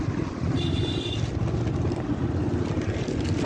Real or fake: real